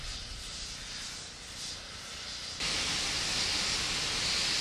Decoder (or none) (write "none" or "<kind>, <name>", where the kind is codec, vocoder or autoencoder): none